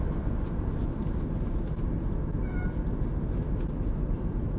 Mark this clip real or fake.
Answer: real